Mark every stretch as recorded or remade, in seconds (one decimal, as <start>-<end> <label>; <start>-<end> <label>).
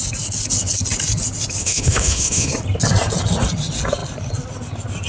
0.0-1.6 recorded; 1.6-2.5 remade; 2.5-5.1 recorded